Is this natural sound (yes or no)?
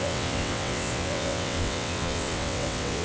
no